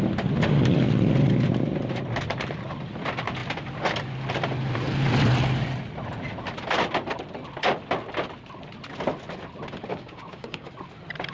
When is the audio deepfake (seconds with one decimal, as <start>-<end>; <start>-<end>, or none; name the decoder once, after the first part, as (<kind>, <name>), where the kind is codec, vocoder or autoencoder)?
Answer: 9.9-10.7 (codec, DAC)